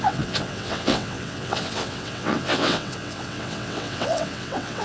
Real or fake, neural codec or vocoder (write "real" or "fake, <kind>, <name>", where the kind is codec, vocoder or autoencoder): fake, vocoder, WaveNeXt